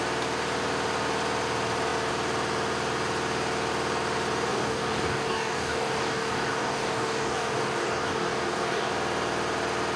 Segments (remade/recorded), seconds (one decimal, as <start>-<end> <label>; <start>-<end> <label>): 0.0-4.5 recorded; 4.5-8.9 remade; 8.9-10.0 recorded